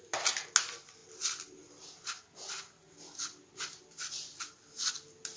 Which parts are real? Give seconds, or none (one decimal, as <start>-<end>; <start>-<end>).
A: 0.0-5.4